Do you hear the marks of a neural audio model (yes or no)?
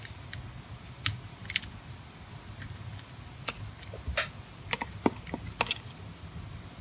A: no